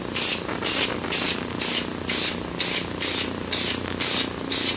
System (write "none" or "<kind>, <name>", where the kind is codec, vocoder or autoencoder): none